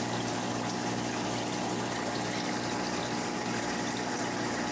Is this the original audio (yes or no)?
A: yes